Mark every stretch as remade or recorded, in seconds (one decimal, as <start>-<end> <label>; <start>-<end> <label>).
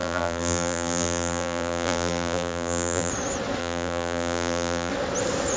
0.0-3.1 remade; 3.1-3.6 recorded; 3.6-4.9 remade; 4.9-5.6 recorded